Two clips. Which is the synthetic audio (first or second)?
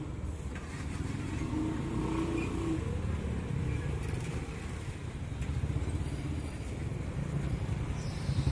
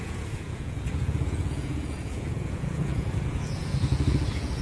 second